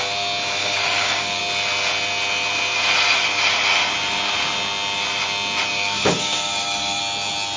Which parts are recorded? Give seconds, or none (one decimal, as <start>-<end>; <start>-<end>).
0.0-0.6; 1.4-5.7; 7.0-7.6